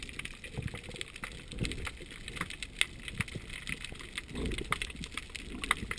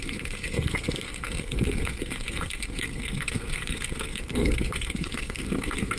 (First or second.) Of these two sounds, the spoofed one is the second